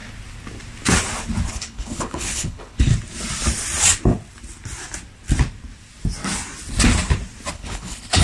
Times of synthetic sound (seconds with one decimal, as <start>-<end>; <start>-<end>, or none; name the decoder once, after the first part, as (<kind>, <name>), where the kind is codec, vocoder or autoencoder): 1.5-2.9 (codec, HILCodec); 7.5-8.2